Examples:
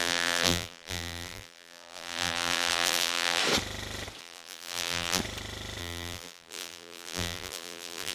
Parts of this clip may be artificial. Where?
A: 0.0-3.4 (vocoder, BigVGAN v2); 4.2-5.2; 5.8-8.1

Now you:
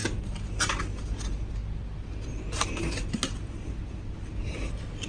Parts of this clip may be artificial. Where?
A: none

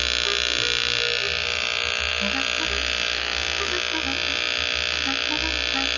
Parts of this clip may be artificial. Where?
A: none

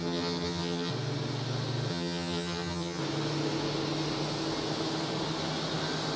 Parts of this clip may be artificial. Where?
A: 0.0-0.9 (vocoder, HiFi-GAN); 1.9-3.0

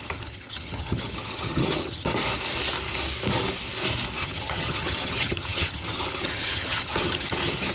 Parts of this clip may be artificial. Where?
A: 0.0-2.2 (vocoder, HiFi-GAN); 4.2-7.7

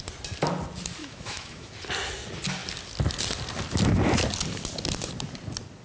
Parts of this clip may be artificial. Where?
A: 1.0-1.7 (autoencoder, DAC-VAE)